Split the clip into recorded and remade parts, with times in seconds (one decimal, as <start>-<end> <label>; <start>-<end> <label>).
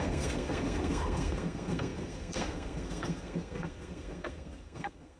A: 0.0-5.2 remade